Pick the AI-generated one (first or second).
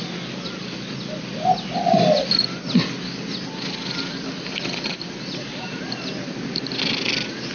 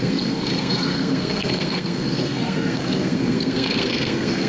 second